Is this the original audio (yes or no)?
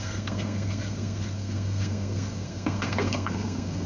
no